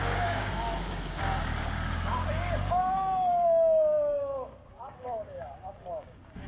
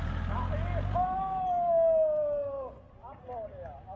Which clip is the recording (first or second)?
second